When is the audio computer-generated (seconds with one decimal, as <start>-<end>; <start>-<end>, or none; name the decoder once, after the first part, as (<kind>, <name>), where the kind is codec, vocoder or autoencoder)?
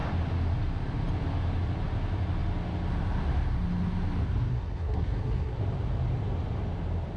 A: 4.5-5.6 (codec, SNAC)